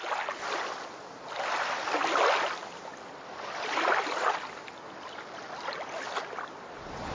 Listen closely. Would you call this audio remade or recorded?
recorded